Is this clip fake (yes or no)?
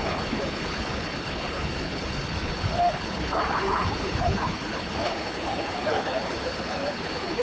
yes